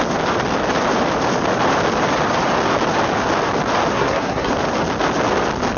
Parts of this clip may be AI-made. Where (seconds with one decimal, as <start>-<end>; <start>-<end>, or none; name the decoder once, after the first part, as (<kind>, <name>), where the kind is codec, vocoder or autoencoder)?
3.9-4.5 (codec, SNAC)